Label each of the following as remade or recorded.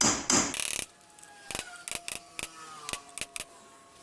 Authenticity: recorded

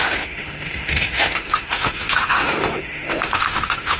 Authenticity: remade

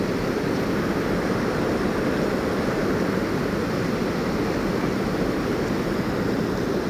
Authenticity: recorded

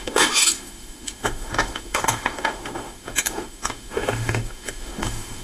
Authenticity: remade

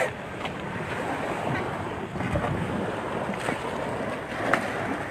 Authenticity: recorded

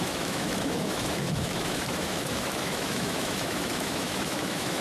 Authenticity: remade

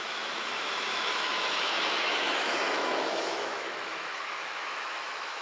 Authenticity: remade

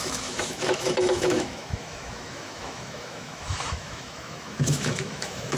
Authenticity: remade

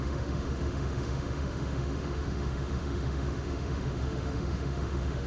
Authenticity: remade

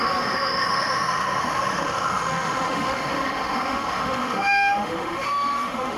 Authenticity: remade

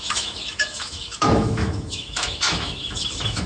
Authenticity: remade